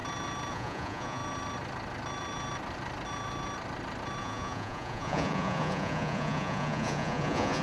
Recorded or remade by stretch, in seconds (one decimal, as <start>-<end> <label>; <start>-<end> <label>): 0.0-0.5 recorded; 0.5-1.2 remade; 1.2-4.2 recorded; 4.2-7.6 remade